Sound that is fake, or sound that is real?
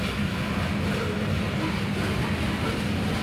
real